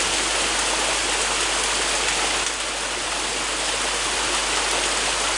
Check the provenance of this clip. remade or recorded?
recorded